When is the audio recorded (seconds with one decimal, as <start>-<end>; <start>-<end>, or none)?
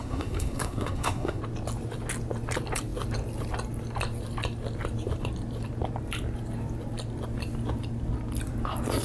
1.4-9.0